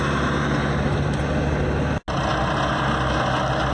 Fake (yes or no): no